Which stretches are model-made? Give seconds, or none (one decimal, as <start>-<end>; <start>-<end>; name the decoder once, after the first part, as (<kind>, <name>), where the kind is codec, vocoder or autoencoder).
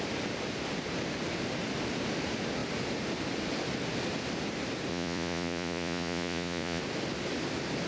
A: 4.9-6.8 (vocoder, Vocos)